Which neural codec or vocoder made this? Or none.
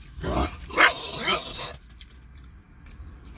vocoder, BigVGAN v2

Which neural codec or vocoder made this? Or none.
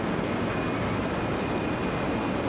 none